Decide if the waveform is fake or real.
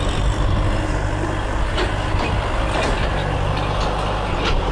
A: real